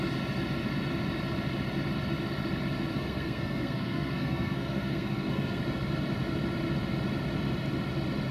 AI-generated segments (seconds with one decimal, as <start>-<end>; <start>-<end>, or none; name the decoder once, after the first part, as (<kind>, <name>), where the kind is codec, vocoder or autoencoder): 2.9-5.6 (codec, SNAC)